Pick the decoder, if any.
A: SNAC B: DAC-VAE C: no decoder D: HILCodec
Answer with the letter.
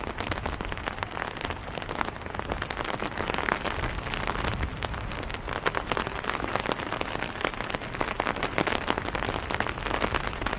C